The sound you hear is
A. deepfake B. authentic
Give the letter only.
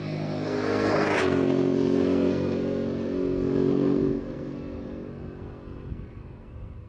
A